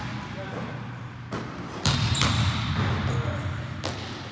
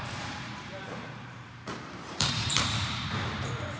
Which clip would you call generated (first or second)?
second